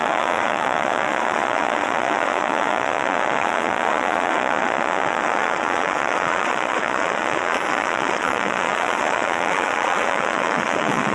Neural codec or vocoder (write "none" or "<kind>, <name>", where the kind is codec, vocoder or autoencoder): vocoder, Vocos